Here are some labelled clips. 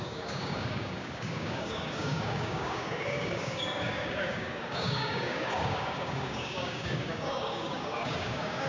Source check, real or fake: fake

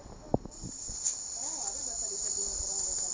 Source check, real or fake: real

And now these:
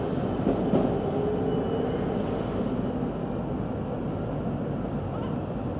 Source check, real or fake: real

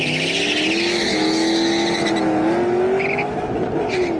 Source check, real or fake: real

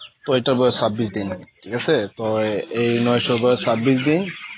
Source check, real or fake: real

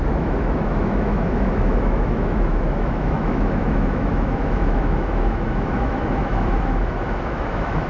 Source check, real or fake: fake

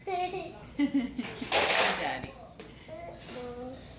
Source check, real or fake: real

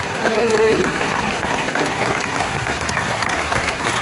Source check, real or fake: fake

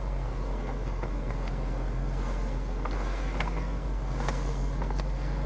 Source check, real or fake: fake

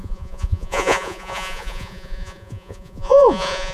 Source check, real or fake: fake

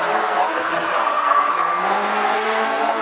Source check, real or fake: fake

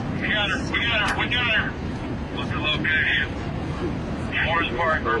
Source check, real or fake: real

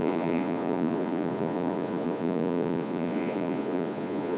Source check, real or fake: fake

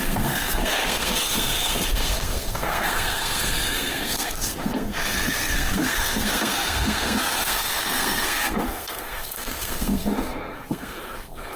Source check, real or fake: fake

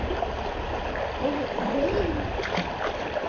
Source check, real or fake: real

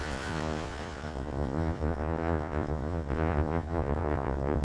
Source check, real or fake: fake